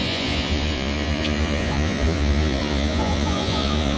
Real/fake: fake